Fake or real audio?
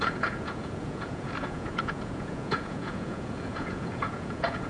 fake